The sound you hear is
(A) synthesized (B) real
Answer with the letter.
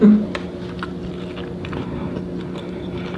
B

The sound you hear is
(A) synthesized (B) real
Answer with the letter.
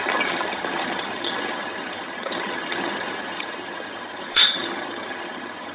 A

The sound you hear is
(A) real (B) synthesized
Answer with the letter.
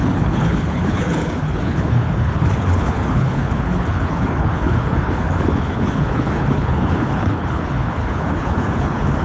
B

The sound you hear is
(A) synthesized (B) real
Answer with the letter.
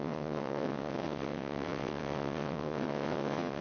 A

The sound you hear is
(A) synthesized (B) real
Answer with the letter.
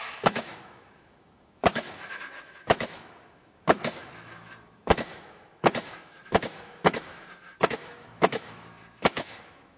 A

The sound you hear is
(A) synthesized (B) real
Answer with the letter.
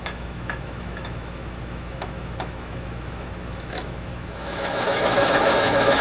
A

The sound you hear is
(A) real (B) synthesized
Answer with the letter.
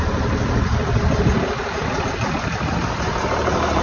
A